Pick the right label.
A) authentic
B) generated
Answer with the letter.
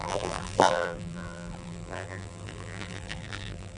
B